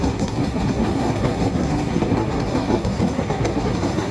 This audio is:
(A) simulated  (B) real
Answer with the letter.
A